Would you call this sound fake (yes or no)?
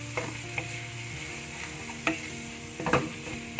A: no